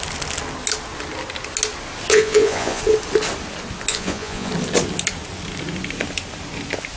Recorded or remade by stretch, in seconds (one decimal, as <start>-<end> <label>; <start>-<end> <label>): 0.0-2.1 recorded; 2.1-2.8 remade; 2.8-3.9 recorded; 3.9-4.5 remade; 4.5-7.0 recorded